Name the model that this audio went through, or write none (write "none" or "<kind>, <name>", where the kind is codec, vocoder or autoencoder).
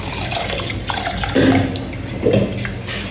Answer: none